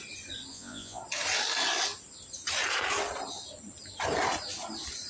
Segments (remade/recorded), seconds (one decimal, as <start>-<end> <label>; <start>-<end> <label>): 0.0-0.5 recorded; 0.5-1.0 remade; 1.0-5.1 recorded